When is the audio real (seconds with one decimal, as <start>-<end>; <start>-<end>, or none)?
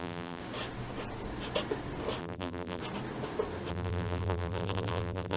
0.4-2.2; 2.8-3.7